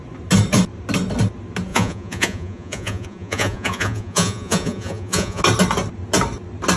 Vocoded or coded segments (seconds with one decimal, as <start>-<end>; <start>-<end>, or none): 1.7-5.4